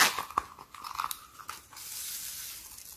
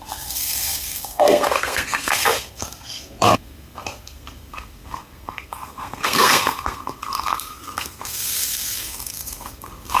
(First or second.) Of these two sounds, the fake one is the second